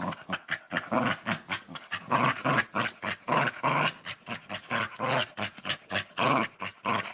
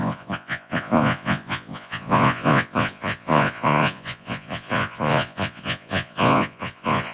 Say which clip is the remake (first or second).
second